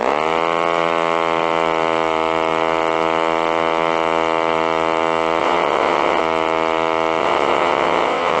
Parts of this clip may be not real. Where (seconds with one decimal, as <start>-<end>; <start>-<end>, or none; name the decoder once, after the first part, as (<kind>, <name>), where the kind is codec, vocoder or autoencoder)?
5.4-6.2 (vocoder, WaveNeXt); 7.2-8.4